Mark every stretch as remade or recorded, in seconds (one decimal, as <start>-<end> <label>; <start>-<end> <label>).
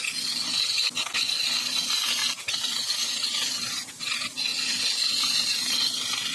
0.0-6.3 recorded